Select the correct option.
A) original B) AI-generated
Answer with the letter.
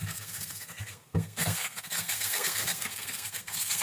B